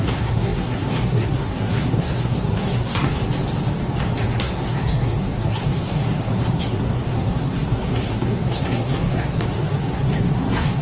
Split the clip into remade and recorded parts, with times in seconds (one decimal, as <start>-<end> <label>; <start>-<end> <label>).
0.0-3.2 remade; 3.2-4.4 recorded; 4.4-10.8 remade